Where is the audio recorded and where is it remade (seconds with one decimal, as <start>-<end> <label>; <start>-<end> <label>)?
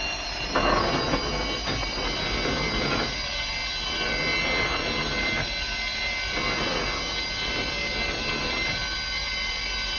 0.0-10.0 recorded